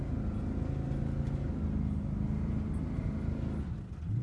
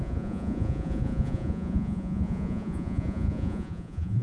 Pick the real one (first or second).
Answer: first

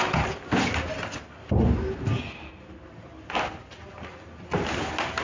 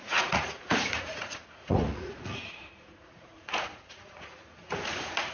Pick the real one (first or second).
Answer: first